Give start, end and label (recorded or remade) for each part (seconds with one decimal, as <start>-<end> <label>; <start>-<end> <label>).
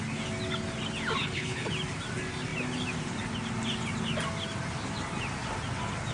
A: 0.0-1.2 recorded; 1.2-1.7 remade; 1.7-6.1 recorded